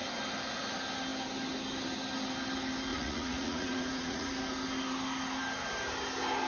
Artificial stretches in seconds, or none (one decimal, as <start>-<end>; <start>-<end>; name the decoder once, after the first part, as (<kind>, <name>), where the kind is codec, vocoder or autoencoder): 2.9-4.3 (vocoder, Vocos)

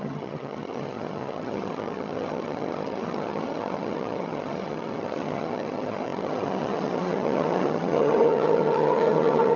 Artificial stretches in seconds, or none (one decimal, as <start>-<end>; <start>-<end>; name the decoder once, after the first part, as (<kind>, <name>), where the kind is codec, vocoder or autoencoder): 0.0-9.6 (vocoder, HiFi-GAN)

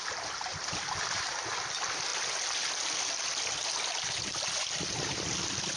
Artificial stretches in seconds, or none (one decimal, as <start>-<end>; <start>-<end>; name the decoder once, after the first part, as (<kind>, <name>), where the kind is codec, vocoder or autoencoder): none